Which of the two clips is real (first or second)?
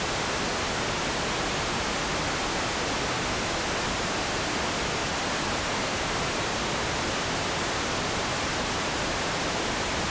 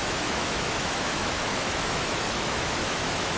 first